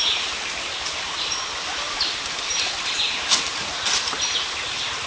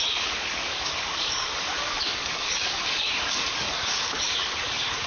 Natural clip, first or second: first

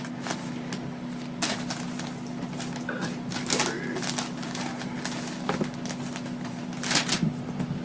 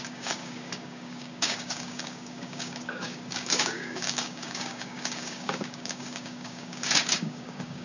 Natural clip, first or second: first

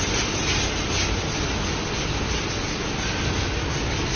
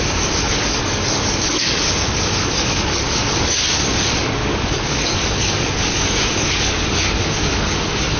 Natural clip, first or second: first